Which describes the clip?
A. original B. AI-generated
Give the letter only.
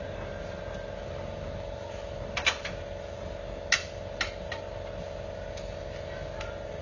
A